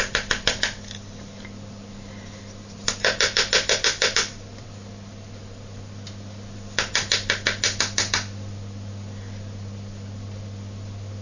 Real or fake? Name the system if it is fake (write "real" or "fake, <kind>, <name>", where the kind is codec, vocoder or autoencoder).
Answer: real